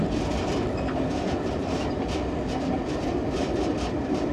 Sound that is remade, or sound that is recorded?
remade